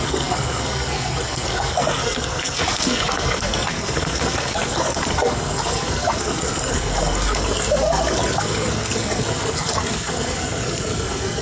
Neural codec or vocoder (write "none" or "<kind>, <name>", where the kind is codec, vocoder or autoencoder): codec, SNAC